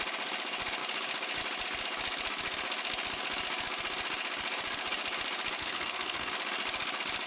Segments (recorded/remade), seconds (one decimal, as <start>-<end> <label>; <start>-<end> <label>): 0.0-5.6 recorded; 5.6-6.3 remade; 6.3-7.3 recorded